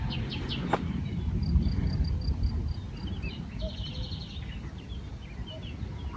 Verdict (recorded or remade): recorded